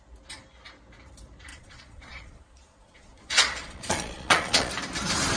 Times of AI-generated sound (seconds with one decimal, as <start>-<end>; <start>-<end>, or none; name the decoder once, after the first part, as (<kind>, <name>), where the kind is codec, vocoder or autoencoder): 1.5-4.7 (vocoder, Vocos)

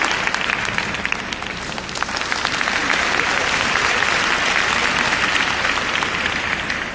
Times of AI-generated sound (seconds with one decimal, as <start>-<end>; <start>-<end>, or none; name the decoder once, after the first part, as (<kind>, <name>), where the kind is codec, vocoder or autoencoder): none

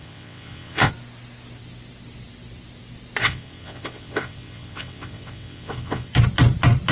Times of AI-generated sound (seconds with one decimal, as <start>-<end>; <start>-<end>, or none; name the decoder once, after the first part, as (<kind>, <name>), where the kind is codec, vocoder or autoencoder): 0.0-0.9 (vocoder, WaveNeXt); 3.2-6.1

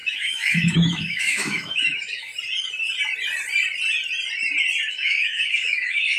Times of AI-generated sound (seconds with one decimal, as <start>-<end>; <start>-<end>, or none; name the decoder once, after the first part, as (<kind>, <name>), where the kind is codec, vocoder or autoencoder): 0.0-2.3 (autoencoder, DAC-VAE); 4.9-6.2